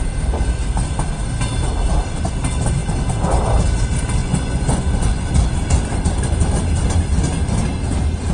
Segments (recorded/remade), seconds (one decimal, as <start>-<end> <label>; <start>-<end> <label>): 0.0-4.2 recorded; 4.2-5.3 remade; 5.3-8.3 recorded